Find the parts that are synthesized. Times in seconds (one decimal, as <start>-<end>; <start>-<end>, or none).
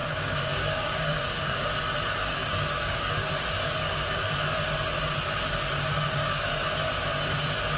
0.0-1.7; 2.2-4.3; 5.9-6.5